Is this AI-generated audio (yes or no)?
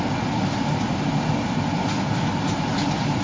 no